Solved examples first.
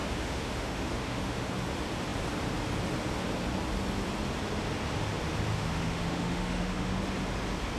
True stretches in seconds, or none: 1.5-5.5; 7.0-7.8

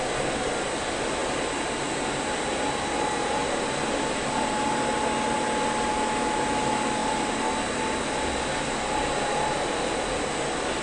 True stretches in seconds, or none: 0.0-5.9; 6.6-10.8

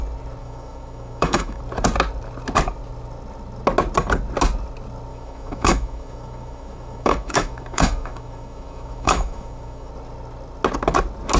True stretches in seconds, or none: 0.0-0.4; 1.6-5.1; 9.9-11.4

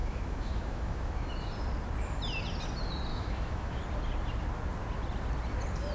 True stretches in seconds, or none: 1.3-3.1; 3.8-5.9

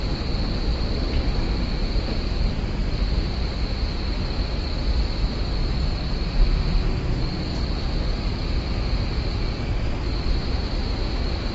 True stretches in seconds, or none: 0.0-11.5

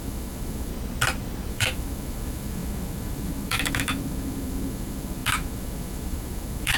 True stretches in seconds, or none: 0.7-1.5